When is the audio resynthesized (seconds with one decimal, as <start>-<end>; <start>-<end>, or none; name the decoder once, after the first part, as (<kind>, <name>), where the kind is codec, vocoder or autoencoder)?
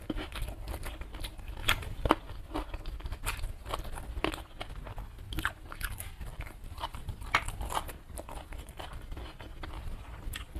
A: 1.6-2.1 (vocoder, BigVGAN v2); 6.3-7.0